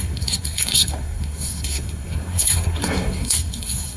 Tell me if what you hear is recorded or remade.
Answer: remade